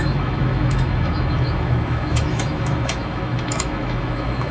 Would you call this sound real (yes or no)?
no